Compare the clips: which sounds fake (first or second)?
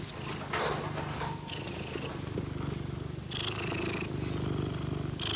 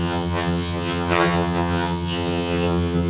second